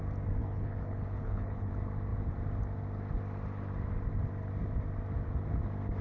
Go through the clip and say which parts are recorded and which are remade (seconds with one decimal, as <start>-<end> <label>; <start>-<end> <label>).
0.0-0.4 recorded; 0.4-1.7 remade; 1.7-6.0 recorded